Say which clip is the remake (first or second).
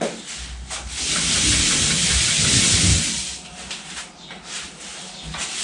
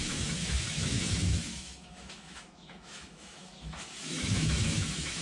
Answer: second